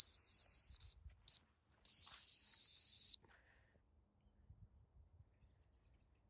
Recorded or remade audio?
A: recorded